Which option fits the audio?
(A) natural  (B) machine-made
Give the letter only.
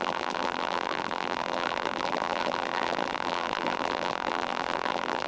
B